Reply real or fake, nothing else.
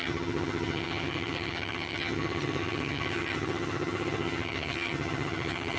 fake